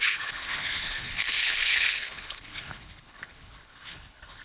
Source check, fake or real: fake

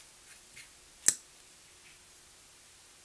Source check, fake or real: real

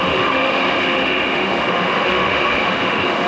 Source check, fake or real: fake